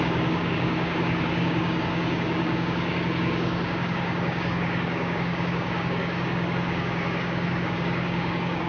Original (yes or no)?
no